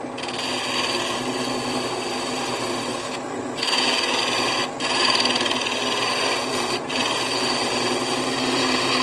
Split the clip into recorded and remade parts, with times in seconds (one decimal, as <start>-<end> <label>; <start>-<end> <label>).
0.0-2.9 recorded; 2.9-4.2 remade; 4.2-9.0 recorded